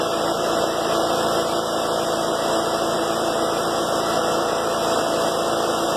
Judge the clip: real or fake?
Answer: real